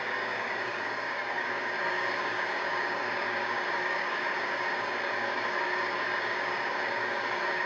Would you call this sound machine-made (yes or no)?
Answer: yes